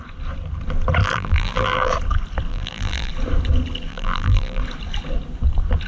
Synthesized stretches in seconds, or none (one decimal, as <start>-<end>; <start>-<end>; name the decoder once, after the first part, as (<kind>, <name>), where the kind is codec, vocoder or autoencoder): 1.0-1.9 (vocoder, BigVGAN v2); 2.5-3.1; 3.9-4.6